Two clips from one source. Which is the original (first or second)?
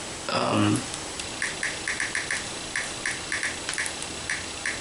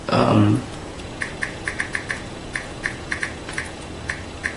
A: first